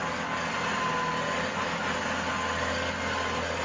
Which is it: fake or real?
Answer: real